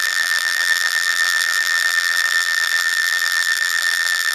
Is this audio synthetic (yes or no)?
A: yes